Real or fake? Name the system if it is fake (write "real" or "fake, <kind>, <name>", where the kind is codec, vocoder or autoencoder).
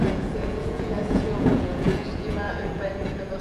fake, vocoder, Vocos